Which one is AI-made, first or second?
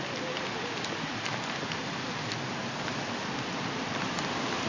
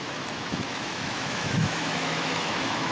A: second